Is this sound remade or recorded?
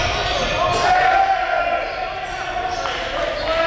recorded